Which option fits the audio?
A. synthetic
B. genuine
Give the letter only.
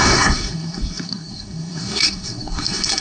A